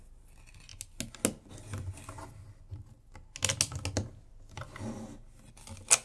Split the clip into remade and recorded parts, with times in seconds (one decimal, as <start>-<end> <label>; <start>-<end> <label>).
0.0-6.0 recorded